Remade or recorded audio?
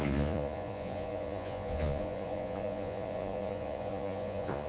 remade